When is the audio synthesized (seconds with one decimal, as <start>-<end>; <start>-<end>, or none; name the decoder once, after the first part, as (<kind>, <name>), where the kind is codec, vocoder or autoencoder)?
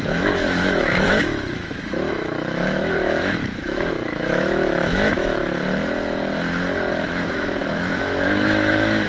0.0-5.4 (autoencoder, DAC-VAE); 6.9-9.1